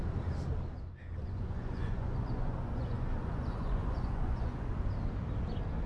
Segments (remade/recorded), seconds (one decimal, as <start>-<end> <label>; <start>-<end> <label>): 0.0-1.2 recorded; 1.2-4.7 remade; 4.7-5.9 recorded